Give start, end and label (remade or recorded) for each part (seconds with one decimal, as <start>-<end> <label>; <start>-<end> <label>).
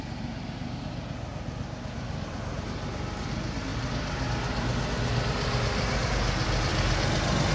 0.0-1.3 recorded; 1.3-2.5 remade; 2.5-7.5 recorded